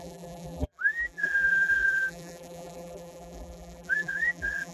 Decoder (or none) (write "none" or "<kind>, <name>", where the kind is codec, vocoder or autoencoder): vocoder, BigVGAN v2